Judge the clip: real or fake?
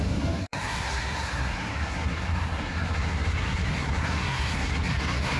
fake